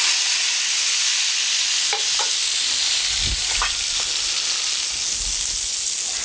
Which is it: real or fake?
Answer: real